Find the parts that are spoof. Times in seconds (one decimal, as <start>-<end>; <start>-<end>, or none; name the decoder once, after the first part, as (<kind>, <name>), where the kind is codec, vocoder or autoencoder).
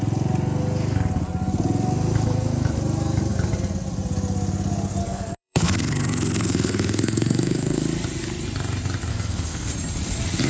5.0-7.8 (codec, SNAC); 9.1-9.7